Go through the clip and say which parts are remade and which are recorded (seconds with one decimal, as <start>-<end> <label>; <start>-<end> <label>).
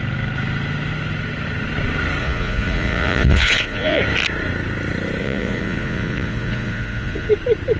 0.0-2.2 recorded; 2.2-4.0 remade; 4.0-5.2 recorded; 5.2-7.3 remade; 7.3-7.8 recorded